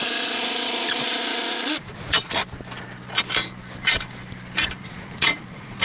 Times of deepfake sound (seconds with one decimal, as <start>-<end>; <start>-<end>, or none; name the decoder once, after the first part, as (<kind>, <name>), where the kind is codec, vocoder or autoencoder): 0.0-2.4 (vocoder, Vocos); 4.8-5.8